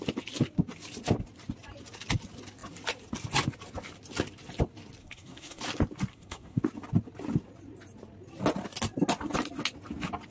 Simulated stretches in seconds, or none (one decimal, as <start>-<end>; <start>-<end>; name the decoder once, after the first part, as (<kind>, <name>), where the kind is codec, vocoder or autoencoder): 5.0-5.6 (codec, SNAC); 6.1-6.6